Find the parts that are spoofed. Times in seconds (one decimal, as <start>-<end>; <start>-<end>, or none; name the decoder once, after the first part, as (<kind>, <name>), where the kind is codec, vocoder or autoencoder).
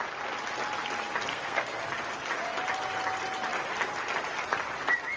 1.3-1.8 (codec, SNAC)